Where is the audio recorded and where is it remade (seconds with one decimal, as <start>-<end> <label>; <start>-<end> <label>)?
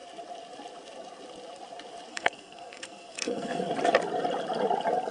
0.0-2.1 recorded; 2.1-3.7 remade; 3.7-5.1 recorded